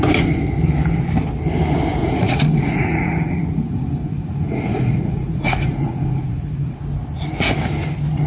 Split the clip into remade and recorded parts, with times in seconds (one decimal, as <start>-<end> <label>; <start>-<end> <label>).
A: 0.0-2.0 recorded; 2.0-6.8 remade; 6.8-8.3 recorded